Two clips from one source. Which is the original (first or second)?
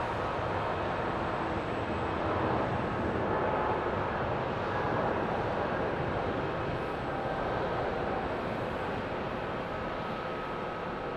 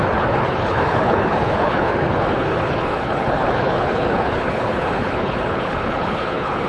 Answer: first